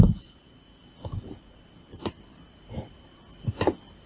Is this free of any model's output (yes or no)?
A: yes